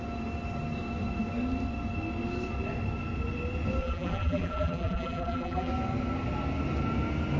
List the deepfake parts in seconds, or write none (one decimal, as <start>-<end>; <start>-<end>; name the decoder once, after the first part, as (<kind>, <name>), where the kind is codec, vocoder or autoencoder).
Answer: 3.8-5.7 (vocoder, BigVGAN v2)